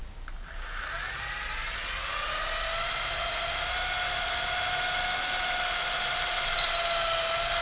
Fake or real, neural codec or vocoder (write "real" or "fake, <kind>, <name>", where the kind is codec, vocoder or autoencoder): real